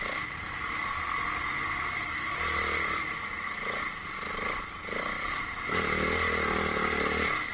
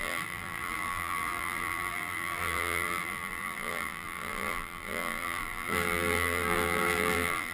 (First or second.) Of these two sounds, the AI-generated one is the second